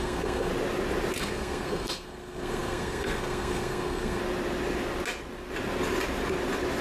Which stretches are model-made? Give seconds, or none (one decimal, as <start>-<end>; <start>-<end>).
0.0-0.5; 1.2-4.2